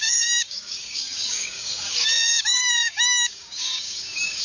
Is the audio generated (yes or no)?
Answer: yes